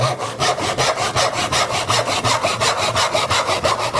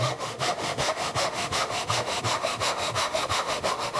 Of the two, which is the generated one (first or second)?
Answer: second